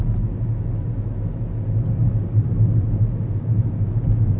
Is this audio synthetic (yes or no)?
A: no